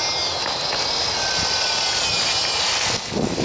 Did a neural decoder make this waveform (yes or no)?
no